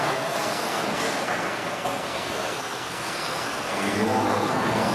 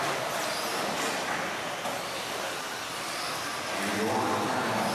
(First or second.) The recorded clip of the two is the second